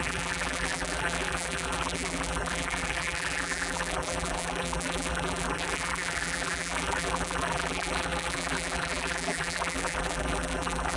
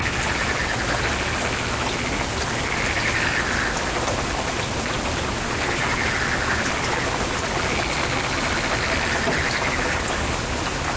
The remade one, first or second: first